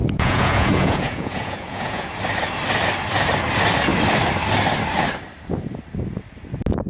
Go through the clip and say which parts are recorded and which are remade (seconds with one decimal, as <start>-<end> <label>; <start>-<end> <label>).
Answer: 0.0-2.1 remade; 2.1-6.9 recorded